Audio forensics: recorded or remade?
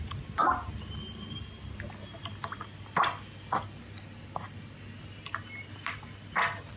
recorded